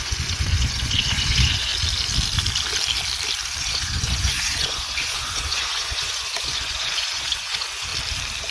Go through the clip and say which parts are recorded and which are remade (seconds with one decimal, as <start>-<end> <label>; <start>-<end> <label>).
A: 0.0-1.7 remade; 1.7-3.6 recorded; 3.6-7.9 remade; 7.9-8.5 recorded